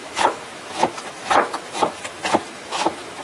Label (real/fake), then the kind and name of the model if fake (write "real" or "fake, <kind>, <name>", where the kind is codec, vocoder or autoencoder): fake, autoencoder, DAC-VAE